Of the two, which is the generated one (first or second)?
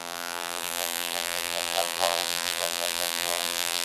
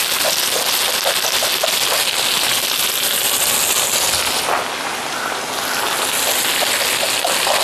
first